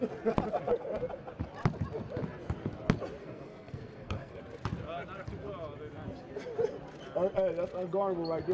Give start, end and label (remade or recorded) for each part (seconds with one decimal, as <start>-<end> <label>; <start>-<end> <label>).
0.0-3.2 recorded; 3.2-4.4 remade; 4.4-8.5 recorded